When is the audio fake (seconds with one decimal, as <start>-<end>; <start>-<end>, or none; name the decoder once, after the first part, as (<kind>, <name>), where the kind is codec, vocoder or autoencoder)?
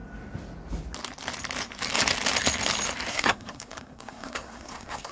3.1-5.1 (codec, SNAC)